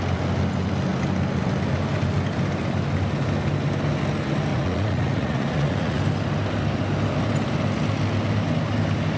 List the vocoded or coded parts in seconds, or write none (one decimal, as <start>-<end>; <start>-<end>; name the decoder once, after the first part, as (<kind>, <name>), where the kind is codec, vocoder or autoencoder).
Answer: 4.5-6.0 (vocoder, Vocos)